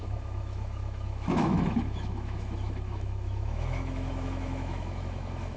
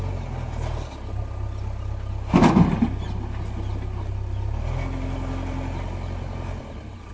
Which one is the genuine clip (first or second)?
second